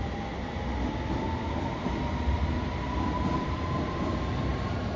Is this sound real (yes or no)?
yes